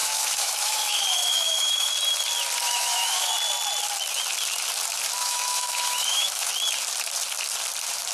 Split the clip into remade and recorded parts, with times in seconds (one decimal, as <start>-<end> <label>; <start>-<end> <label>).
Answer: 0.0-1.9 remade; 1.9-2.6 recorded; 2.6-3.3 remade; 3.3-5.2 recorded; 5.2-6.5 remade; 6.5-8.1 recorded